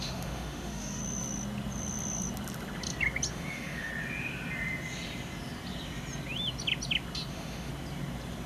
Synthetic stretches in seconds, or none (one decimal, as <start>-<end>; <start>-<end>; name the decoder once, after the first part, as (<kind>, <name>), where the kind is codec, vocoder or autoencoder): 0.0-1.0 (autoencoder, DAC-VAE); 3.3-3.9; 7.3-7.7

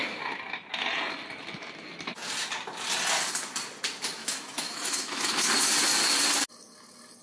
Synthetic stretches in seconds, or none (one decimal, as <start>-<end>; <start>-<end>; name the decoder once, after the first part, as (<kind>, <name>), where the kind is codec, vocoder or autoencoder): 4.2-5.5 (autoencoder, DAC-VAE)

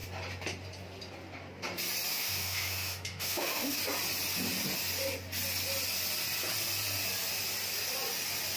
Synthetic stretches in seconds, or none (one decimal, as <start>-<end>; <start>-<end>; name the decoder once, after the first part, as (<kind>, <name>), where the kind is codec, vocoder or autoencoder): 2.1-3.8 (autoencoder, DAC-VAE)

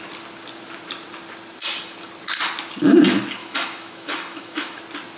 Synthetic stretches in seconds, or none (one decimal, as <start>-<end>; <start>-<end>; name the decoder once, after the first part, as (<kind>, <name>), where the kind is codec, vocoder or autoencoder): 3.4-4.8 (autoencoder, DAC-VAE)

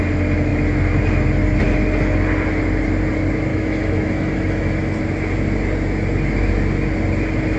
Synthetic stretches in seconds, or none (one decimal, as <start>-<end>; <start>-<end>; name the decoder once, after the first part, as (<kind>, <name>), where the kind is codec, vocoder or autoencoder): 3.5-5.0 (autoencoder, DAC-VAE)

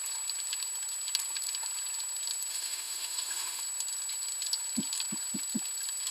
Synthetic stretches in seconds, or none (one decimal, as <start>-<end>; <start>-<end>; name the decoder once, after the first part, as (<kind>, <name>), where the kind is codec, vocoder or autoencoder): 2.5-3.6 (autoencoder, DAC-VAE)

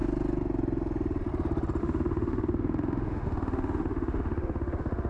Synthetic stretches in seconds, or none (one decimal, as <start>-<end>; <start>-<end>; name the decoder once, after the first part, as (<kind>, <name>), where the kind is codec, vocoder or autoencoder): 1.8-5.1 (autoencoder, DAC-VAE)

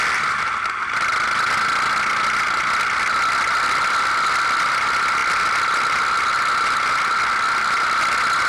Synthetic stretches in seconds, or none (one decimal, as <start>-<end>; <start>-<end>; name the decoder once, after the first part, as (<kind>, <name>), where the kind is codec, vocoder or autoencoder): none